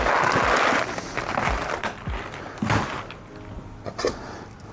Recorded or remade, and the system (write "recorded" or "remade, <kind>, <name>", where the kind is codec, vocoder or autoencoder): recorded